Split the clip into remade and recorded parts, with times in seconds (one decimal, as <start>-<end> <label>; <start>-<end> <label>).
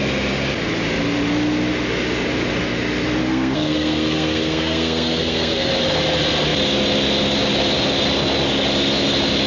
0.0-3.2 recorded; 3.2-5.7 remade; 5.7-9.5 recorded